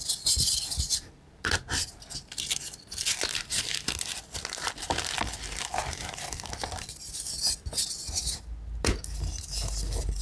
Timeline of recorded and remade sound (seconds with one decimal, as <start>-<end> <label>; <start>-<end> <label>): 0.0-10.2 recorded